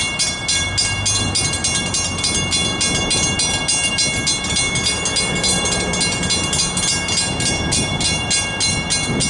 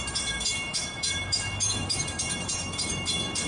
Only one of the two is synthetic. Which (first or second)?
second